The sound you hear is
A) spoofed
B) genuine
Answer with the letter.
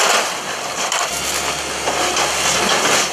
B